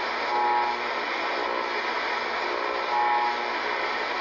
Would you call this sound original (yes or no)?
yes